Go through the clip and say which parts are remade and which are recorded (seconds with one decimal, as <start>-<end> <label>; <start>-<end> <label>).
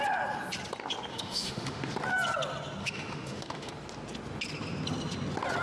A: 0.0-1.1 recorded; 1.1-1.9 remade; 1.9-2.8 recorded; 2.8-3.7 remade; 3.7-5.6 recorded